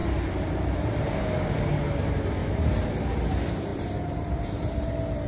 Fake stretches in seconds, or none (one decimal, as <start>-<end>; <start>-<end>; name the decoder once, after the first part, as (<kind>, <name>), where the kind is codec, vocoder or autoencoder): 0.0-1.1 (vocoder, BigVGAN v2); 2.4-2.9; 3.7-5.3

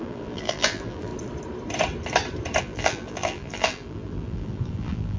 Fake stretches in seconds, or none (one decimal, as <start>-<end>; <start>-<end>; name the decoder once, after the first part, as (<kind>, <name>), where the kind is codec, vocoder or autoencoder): 0.0-1.1 (vocoder, BigVGAN v2); 2.6-5.2

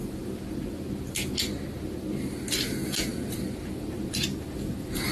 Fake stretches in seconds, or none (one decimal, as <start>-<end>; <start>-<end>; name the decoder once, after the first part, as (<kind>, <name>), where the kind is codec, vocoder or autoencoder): 3.1-5.1 (vocoder, BigVGAN v2)

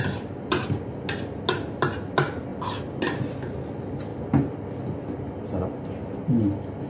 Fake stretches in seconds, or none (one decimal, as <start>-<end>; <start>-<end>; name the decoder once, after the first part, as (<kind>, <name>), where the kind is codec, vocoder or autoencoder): none

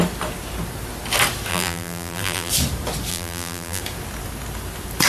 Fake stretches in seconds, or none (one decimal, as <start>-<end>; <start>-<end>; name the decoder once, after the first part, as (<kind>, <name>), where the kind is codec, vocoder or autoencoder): 1.5-2.5 (vocoder, BigVGAN v2); 3.1-3.8